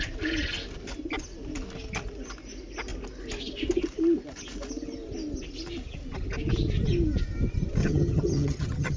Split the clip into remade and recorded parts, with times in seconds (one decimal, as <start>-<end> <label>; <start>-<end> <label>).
0.0-7.8 recorded; 7.8-9.0 remade